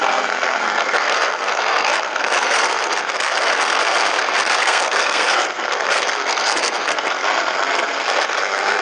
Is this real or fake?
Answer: fake